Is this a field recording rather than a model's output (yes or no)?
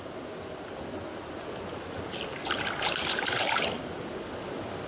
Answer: yes